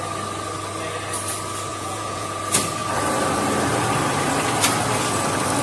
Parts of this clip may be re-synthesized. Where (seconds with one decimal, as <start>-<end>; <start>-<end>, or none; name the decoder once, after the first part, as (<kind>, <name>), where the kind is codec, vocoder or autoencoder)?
1.7-2.3 (vocoder, Vocos)